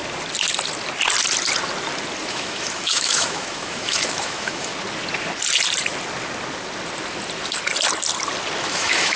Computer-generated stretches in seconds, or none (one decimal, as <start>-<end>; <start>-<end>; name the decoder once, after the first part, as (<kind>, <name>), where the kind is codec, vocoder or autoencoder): 2.3-4.7 (autoencoder, DAC-VAE); 8.6-9.2